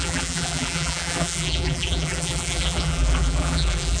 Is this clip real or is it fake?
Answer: fake